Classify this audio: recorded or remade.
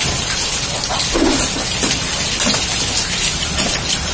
recorded